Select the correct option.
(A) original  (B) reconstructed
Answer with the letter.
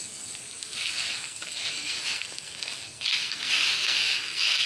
B